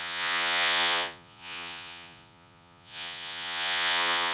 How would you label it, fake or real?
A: fake